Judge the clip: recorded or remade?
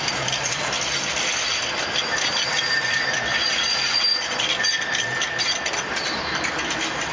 recorded